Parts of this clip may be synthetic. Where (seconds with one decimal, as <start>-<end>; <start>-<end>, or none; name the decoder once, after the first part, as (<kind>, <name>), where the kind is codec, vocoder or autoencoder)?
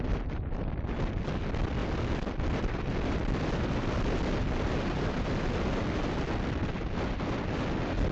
none